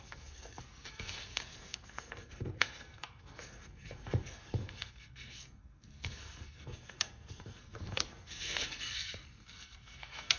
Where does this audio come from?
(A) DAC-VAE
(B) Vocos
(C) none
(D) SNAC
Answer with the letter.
D